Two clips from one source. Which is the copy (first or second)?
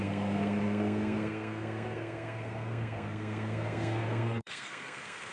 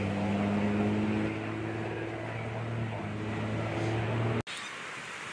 first